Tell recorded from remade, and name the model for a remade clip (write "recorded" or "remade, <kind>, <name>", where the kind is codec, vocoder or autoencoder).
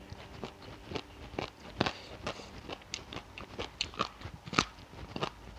recorded